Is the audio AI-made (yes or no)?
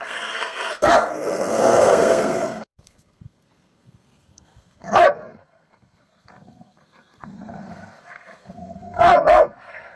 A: yes